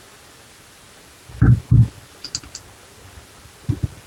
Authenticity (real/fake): real